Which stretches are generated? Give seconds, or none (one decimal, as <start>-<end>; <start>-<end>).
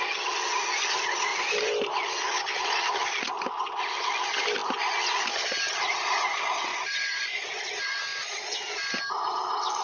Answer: 6.7-7.6